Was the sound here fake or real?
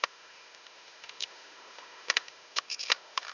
fake